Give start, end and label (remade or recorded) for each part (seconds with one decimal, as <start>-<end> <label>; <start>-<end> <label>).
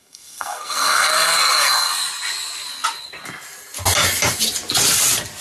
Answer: 0.0-1.9 remade; 1.9-5.4 recorded